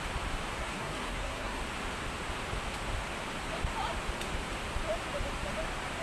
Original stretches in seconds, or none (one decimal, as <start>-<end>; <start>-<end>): 0.0-0.6; 1.6-6.0